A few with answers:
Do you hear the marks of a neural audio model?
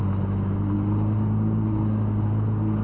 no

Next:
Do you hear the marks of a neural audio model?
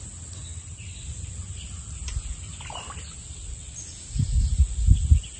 no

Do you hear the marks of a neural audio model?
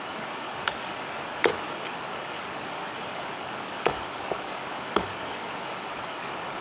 yes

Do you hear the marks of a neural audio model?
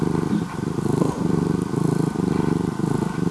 no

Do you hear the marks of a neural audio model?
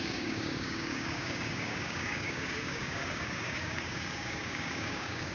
yes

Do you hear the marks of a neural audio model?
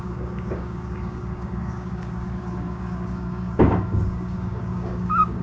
yes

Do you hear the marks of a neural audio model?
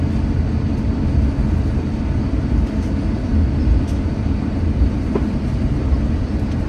no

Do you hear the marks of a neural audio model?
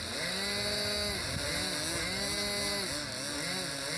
no